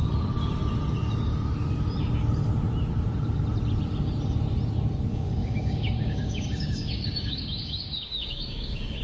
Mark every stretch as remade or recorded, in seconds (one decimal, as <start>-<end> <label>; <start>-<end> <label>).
0.0-5.1 recorded; 5.1-9.0 remade